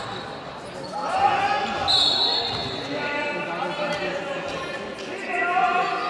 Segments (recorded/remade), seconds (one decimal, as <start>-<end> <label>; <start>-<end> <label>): 0.0-6.1 recorded